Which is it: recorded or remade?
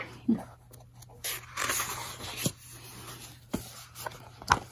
recorded